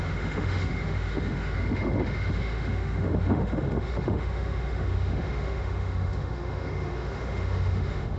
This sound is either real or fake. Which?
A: fake